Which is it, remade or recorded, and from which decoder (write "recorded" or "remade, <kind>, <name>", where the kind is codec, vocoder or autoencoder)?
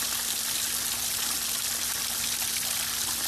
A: recorded